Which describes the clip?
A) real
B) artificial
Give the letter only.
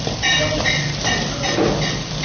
A